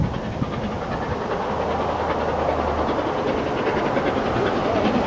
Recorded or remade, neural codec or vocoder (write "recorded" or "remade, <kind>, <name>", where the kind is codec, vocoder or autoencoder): recorded